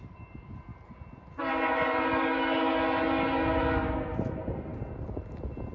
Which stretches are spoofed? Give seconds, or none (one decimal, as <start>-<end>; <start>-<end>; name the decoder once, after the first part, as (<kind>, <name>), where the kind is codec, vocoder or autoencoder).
none